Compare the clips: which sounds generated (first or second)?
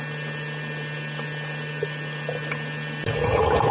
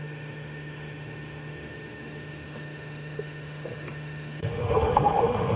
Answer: second